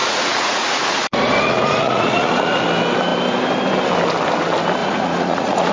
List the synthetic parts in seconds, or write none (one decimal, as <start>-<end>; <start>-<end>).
0.0-2.6; 4.8-5.7